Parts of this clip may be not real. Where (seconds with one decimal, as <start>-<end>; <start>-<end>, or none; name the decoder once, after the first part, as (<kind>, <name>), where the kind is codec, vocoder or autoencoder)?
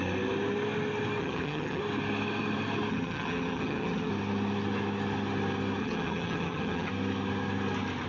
1.2-1.8 (vocoder, HiFi-GAN); 2.9-4.1; 5.8-6.9